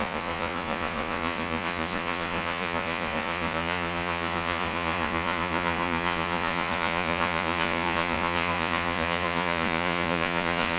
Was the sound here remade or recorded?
remade